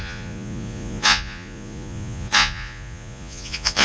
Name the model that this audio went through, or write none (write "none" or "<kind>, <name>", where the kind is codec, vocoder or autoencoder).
vocoder, Vocos